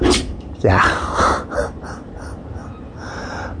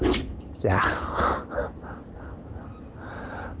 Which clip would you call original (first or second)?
second